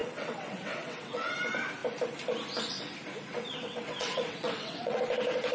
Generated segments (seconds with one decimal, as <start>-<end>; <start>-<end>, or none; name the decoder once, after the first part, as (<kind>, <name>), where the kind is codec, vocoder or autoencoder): 0.0-1.3 (vocoder, WaveNeXt); 3.3-5.0